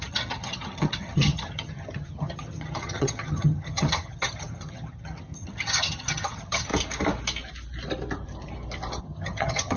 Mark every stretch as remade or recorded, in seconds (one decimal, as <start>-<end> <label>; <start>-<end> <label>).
0.0-6.7 remade; 6.7-9.0 recorded; 9.0-9.8 remade